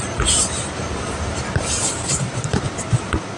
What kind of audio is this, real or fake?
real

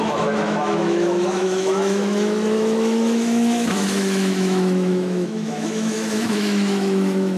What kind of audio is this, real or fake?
fake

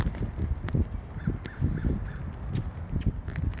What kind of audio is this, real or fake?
real